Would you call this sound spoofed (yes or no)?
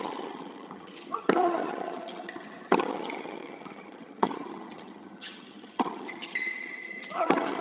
yes